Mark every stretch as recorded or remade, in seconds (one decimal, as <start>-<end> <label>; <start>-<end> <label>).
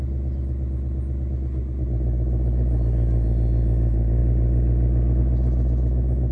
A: 0.0-6.3 recorded